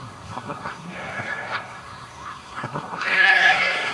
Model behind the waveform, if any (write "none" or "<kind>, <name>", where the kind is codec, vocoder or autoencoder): codec, SNAC